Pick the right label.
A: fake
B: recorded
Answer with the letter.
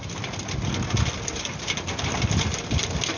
B